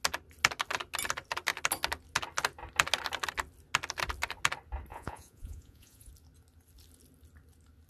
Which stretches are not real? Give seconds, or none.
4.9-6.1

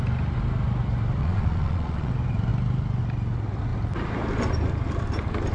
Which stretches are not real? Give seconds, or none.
1.2-2.1

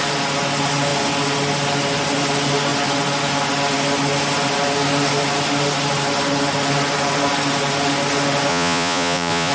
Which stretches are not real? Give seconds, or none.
8.5-9.5

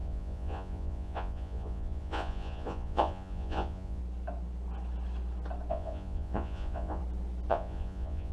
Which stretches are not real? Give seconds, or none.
0.0-4.0; 5.7-7.0; 7.5-8.3

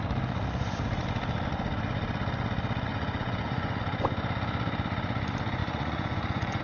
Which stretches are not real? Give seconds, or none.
2.9-3.8; 5.6-6.6

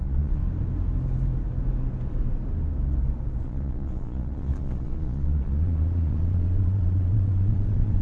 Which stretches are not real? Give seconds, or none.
0.0-0.4; 3.4-8.0

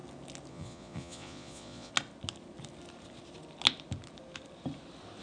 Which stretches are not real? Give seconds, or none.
0.5-1.9

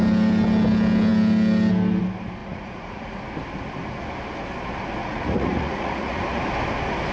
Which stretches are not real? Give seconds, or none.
2.4-3.2; 5.0-6.4